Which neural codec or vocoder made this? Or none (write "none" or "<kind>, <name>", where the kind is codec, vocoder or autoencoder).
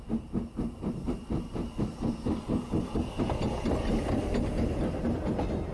none